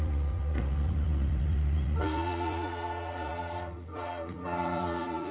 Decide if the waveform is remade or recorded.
remade